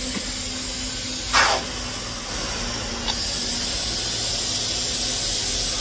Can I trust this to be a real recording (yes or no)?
yes